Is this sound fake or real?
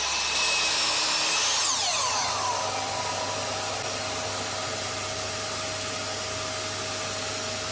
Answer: real